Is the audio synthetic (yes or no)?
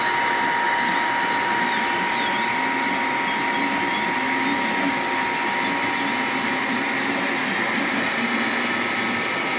no